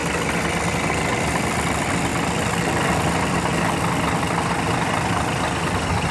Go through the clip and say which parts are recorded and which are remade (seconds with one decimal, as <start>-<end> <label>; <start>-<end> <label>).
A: 0.0-6.1 recorded